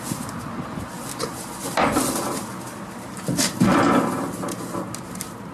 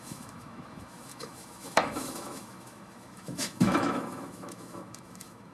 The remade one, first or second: second